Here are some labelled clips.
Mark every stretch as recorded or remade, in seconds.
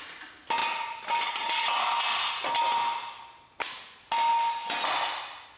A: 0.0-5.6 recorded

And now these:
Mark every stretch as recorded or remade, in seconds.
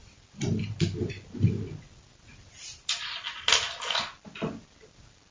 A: 0.0-5.3 recorded